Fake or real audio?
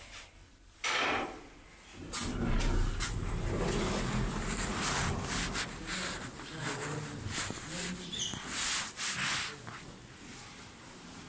real